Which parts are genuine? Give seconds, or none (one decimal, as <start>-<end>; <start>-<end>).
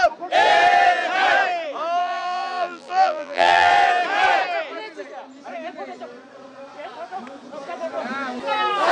0.0-2.0; 3.7-8.9